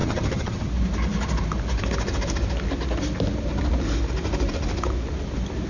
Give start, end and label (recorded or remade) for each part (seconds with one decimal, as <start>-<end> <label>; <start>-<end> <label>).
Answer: 0.0-0.7 remade; 0.7-5.7 recorded

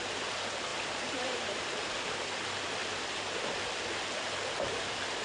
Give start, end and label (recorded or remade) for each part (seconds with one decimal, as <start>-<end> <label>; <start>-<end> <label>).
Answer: 0.0-0.7 recorded; 0.7-2.2 remade; 2.2-5.2 recorded

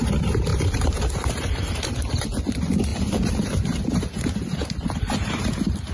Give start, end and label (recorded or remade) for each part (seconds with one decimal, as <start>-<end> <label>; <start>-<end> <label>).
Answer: 0.0-0.5 recorded; 0.5-1.8 remade; 1.8-2.9 recorded; 2.9-5.9 remade